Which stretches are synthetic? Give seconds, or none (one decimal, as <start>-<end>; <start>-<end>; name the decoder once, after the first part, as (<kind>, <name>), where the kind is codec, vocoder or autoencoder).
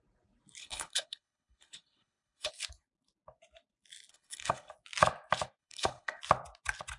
0.6-2.5 (codec, HILCodec); 4.1-4.7; 5.6-6.2